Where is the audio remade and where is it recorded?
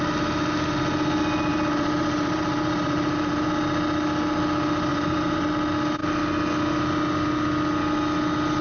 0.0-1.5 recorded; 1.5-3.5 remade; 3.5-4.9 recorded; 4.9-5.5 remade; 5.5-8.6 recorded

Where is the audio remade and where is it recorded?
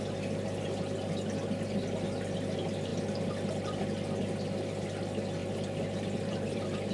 0.0-5.4 recorded; 5.4-6.9 remade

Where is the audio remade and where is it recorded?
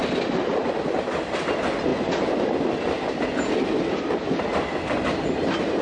0.0-5.8 recorded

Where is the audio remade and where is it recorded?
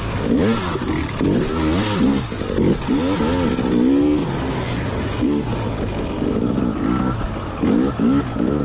0.0-4.2 recorded; 4.2-5.0 remade; 5.0-8.6 recorded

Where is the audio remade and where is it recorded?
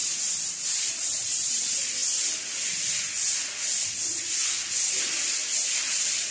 0.0-0.9 recorded; 0.9-2.0 remade; 2.0-5.8 recorded; 5.8-6.3 remade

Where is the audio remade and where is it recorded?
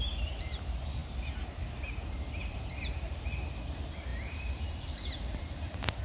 0.0-6.0 remade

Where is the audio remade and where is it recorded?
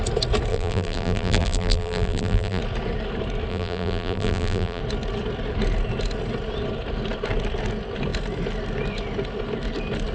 0.0-0.5 recorded; 0.5-2.6 remade; 2.6-3.5 recorded; 3.5-4.8 remade; 4.8-10.1 recorded